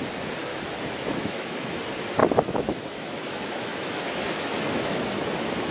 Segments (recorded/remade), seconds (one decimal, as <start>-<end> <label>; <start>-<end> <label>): 0.0-0.5 recorded; 0.5-1.8 remade; 1.8-2.2 recorded; 2.2-5.7 remade